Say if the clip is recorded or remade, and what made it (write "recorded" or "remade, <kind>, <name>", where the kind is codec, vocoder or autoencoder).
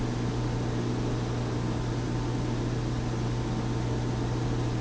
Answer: recorded